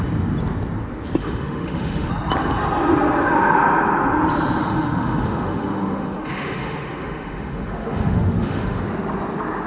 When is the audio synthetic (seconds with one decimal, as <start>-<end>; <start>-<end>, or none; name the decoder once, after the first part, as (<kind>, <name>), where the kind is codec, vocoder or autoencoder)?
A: 1.2-2.1 (autoencoder, DAC-VAE); 4.6-8.8